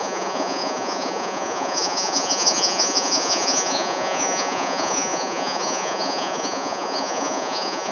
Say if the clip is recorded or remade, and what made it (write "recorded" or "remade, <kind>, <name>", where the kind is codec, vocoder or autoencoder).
remade, vocoder, Vocos